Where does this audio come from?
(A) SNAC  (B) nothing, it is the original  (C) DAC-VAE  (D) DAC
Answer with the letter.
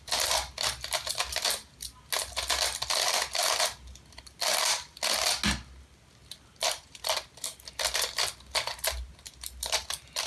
B